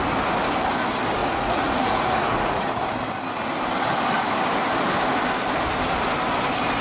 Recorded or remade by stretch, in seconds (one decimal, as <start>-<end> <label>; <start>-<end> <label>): 0.0-1.2 recorded; 1.2-2.8 remade; 2.8-6.8 recorded